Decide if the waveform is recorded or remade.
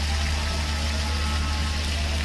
recorded